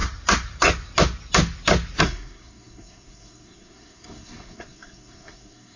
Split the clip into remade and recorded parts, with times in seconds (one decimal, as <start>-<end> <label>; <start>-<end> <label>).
0.0-2.0 recorded; 2.0-5.8 remade